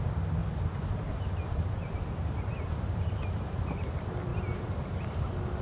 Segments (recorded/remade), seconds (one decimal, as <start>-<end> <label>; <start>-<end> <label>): 0.0-5.6 recorded